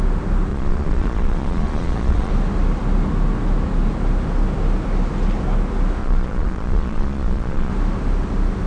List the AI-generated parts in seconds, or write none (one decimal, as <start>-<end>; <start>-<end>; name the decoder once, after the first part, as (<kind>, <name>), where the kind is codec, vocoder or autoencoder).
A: 0.5-2.3 (vocoder, Vocos); 6.0-7.7